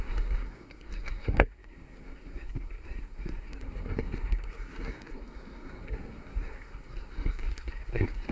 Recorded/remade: remade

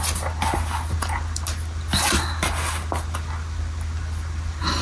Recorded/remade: recorded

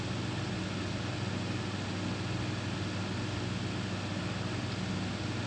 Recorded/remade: recorded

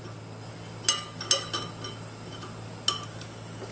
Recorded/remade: recorded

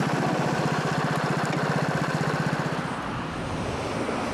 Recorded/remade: recorded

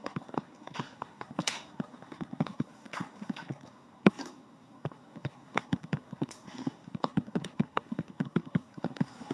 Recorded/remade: remade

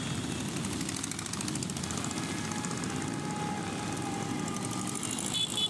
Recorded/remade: recorded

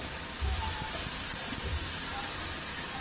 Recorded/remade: recorded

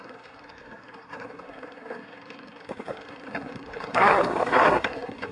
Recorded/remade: remade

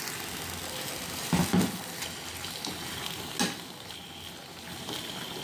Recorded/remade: recorded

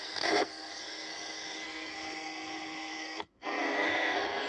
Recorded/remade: remade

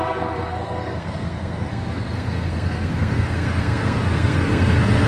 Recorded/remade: remade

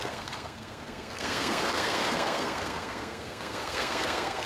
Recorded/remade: remade